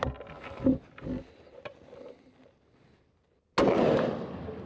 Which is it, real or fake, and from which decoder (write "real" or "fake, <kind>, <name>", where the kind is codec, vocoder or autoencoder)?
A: real